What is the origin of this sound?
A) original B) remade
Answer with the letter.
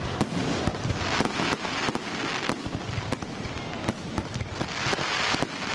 A